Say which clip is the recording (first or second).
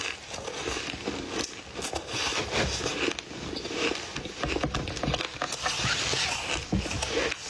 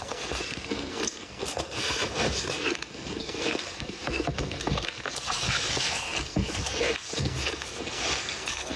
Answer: first